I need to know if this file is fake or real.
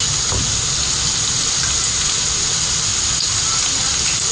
real